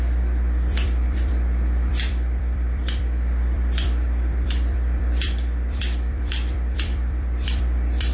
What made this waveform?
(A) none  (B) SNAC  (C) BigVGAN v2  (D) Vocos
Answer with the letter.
C